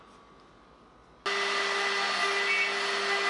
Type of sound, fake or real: real